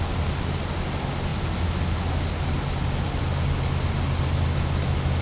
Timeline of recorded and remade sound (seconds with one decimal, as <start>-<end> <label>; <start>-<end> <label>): 0.0-5.2 recorded